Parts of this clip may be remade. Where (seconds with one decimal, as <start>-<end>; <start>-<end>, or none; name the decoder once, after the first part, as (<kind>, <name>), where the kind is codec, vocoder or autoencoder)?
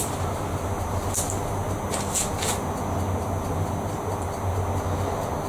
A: none